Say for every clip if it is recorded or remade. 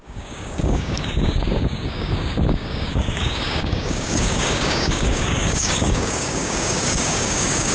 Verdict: remade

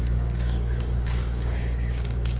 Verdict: remade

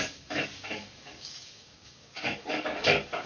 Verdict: remade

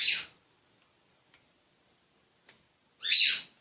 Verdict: recorded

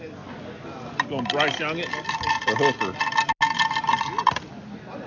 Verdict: recorded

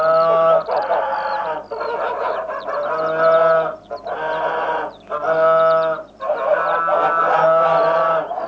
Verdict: recorded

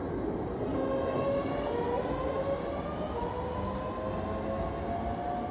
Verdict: recorded